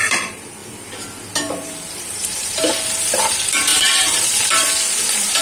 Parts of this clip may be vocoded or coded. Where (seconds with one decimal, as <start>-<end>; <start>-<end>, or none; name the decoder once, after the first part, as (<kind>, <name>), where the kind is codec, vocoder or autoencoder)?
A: 0.0-0.6 (vocoder, BigVGAN v2); 1.3-5.4